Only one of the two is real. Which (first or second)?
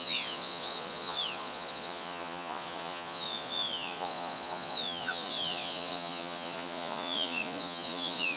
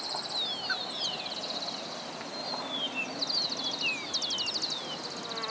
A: second